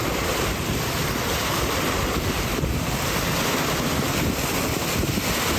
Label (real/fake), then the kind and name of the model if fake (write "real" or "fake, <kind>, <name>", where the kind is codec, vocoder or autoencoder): real